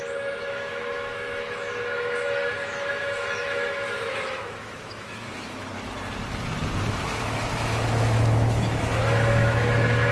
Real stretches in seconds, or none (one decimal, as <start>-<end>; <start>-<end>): 5.6-6.9